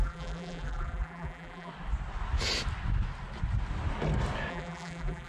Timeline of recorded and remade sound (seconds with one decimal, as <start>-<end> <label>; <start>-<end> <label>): 0.0-1.7 remade; 1.7-4.5 recorded; 4.5-5.3 remade